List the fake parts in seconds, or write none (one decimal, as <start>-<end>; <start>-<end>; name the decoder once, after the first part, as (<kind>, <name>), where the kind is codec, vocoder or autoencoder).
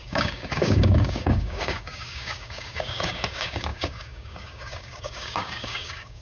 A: 0.0-6.2 (codec, DAC)